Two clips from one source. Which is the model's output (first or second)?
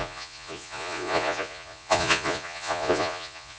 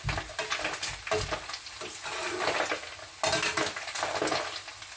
first